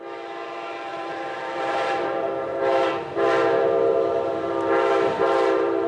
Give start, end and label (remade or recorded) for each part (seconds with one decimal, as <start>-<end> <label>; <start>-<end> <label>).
0.0-0.9 recorded; 0.9-2.9 remade; 2.9-3.9 recorded; 3.9-5.9 remade